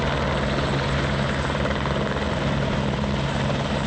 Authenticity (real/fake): real